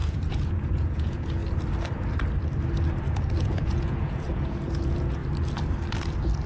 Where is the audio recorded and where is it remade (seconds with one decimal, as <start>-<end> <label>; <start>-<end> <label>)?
0.0-1.4 remade; 1.4-3.4 recorded; 3.4-5.2 remade; 5.2-6.5 recorded